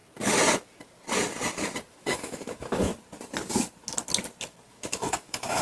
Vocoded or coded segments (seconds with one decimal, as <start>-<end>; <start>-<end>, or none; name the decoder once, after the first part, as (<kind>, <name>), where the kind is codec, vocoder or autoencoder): 1.9-2.9 (autoencoder, DAC-VAE); 4.7-5.6